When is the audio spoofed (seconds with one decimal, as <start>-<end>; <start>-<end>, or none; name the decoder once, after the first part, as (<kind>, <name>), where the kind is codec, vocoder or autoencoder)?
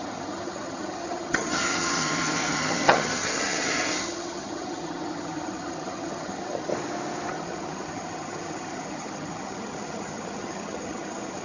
0.0-6.7 (vocoder, HiFi-GAN); 7.3-11.4